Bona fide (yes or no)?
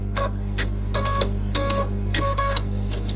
no